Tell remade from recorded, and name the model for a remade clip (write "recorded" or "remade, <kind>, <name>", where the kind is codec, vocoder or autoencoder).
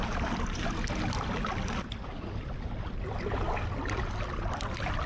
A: recorded